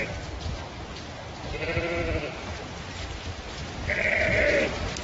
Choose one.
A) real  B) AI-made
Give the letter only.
A